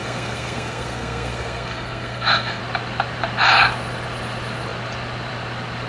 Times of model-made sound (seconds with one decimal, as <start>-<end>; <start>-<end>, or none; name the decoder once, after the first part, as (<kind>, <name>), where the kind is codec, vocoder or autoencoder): 0.0-2.6 (codec, SNAC)